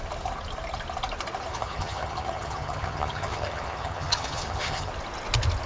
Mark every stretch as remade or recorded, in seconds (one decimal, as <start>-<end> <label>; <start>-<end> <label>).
0.0-1.5 recorded; 1.5-4.9 remade; 4.9-5.7 recorded